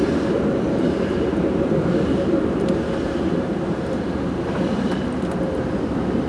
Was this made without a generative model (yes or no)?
no